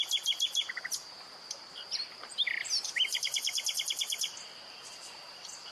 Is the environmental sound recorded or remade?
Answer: remade